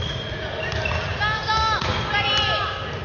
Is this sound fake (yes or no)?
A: no